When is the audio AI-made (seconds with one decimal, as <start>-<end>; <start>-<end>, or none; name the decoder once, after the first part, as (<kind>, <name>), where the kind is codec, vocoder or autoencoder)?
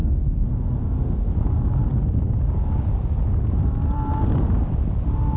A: 0.0-1.3 (codec, SNAC)